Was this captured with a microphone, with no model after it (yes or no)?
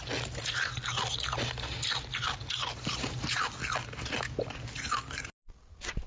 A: yes